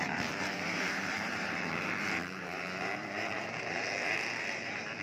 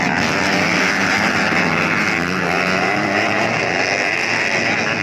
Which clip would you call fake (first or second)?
first